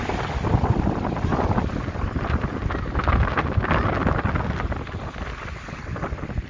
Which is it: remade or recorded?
recorded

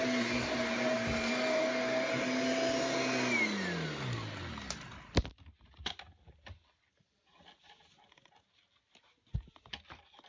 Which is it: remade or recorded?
recorded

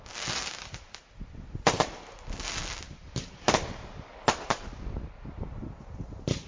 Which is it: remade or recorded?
recorded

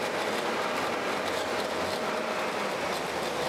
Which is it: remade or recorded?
recorded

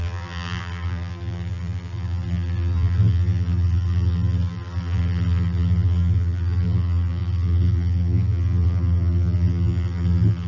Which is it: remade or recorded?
remade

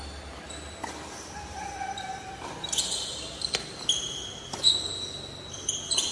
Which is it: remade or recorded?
recorded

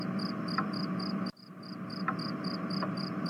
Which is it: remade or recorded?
recorded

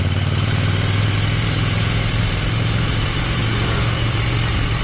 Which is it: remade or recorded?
remade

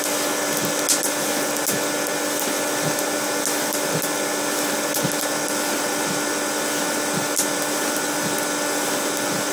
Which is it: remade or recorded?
recorded